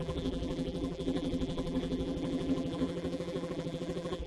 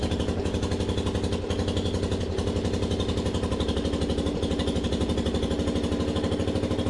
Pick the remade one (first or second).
first